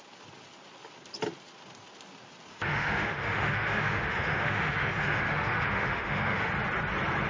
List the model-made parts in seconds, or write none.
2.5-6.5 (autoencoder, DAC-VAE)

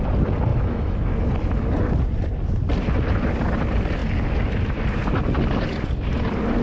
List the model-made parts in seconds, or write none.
0.5-1.1 (autoencoder, DAC-VAE)

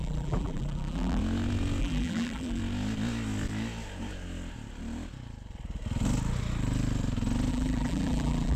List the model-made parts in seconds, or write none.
0.0-1.2 (vocoder, BigVGAN v2); 1.8-2.6; 7.5-8.6

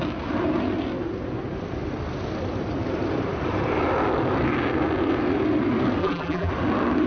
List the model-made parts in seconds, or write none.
6.0-6.5 (vocoder, BigVGAN v2)

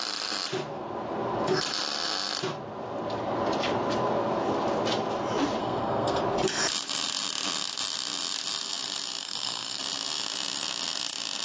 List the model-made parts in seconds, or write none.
5.6-6.2 (codec, SNAC); 9.2-9.8

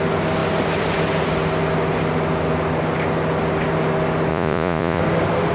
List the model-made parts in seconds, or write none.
4.3-5.0 (vocoder, Vocos)